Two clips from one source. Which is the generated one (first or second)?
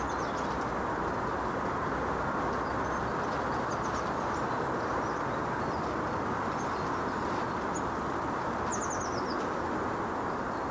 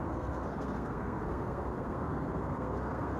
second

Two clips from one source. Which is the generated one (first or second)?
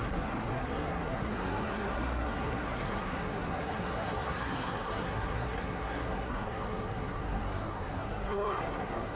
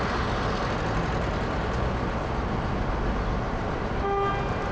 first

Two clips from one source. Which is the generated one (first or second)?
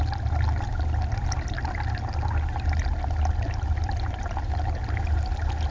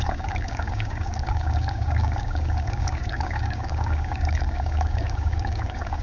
second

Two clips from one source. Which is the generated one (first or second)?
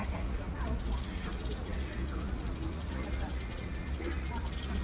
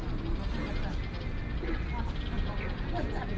first